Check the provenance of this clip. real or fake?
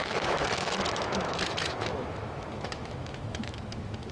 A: fake